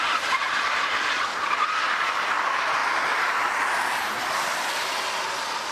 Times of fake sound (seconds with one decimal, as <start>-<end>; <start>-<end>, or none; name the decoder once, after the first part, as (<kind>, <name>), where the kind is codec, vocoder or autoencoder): none